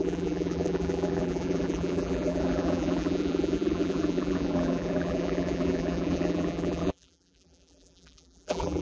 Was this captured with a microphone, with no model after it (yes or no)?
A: no